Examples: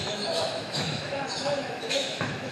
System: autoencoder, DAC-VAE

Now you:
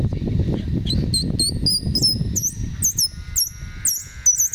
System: none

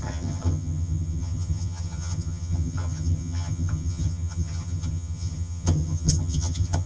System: vocoder, HiFi-GAN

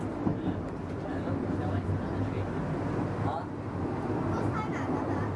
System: none